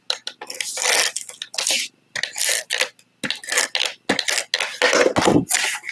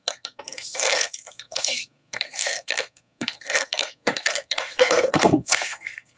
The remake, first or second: second